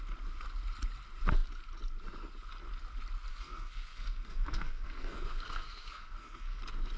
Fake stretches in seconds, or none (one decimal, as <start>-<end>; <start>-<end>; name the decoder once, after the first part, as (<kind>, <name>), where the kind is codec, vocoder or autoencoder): 3.3-6.6 (codec, SNAC)